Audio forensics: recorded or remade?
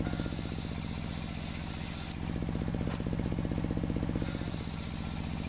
recorded